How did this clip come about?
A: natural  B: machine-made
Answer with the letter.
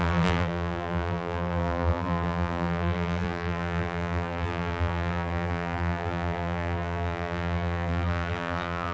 B